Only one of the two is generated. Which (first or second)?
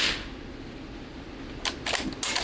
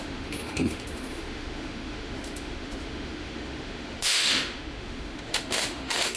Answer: second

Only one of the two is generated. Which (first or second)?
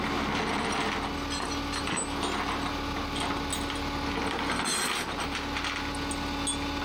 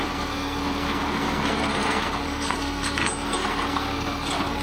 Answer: second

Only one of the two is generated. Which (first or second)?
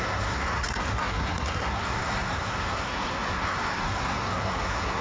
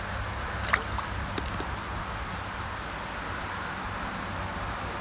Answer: first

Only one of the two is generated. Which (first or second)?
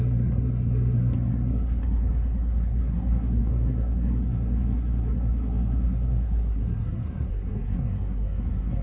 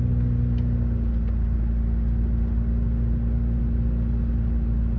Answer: first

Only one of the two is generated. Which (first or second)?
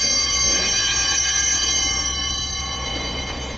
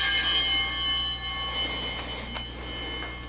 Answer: first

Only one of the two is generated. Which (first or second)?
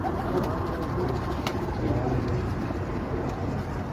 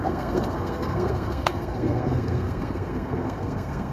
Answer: second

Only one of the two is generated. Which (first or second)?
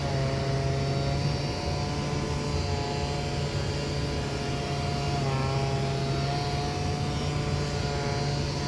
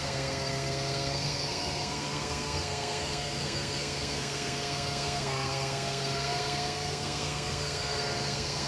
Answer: second